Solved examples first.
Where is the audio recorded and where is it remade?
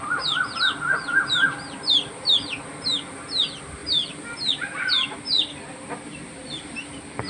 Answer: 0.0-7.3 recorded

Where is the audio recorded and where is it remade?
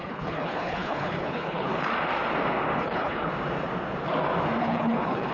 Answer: 0.0-1.7 remade; 1.7-2.8 recorded; 2.8-3.3 remade; 3.3-4.6 recorded; 4.6-5.3 remade